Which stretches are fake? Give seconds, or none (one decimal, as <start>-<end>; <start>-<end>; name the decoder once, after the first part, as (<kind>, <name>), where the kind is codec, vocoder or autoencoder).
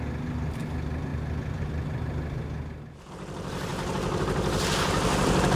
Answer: none